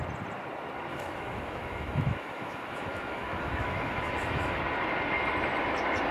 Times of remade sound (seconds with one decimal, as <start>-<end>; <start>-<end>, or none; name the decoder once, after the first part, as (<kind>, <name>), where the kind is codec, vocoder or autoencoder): 0.9-4.6 (autoencoder, DAC-VAE)